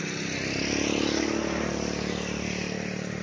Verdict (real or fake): real